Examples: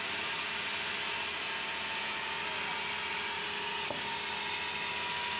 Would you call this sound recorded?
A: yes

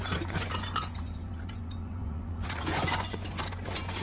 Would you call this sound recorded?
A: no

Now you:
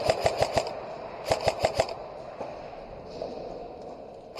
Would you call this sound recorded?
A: yes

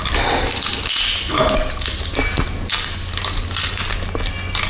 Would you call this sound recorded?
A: yes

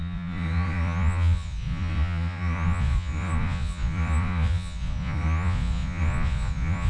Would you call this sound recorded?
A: no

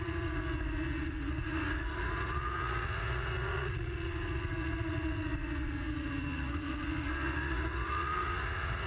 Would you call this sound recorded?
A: no